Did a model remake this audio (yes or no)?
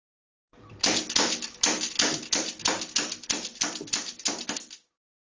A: no